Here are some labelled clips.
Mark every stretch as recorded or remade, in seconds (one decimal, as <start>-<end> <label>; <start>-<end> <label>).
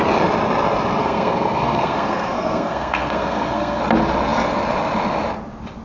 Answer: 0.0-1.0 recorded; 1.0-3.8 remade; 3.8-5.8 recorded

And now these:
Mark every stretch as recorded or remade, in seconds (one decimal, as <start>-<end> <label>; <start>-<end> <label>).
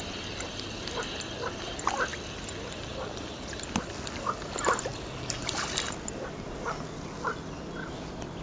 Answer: 0.0-8.4 recorded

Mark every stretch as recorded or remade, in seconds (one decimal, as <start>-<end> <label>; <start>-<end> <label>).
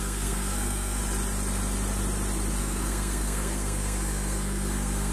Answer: 0.0-1.0 remade; 1.0-2.6 recorded; 2.6-5.1 remade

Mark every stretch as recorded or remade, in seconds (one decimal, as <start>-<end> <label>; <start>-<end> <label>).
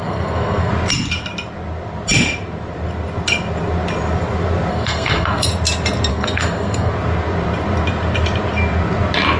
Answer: 0.0-0.7 remade; 0.7-4.7 recorded; 4.7-5.5 remade; 5.5-6.1 recorded; 6.1-6.9 remade; 6.9-9.4 recorded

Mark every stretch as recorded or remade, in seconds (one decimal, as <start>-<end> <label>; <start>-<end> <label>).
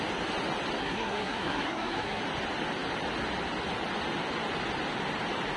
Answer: 0.0-0.8 recorded; 0.8-2.2 remade; 2.2-5.6 recorded